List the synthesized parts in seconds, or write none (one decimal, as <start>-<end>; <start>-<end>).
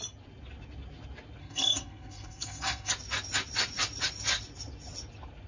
1.4-2.9